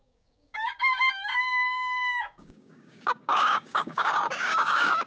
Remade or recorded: remade